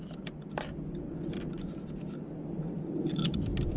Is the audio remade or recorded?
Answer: recorded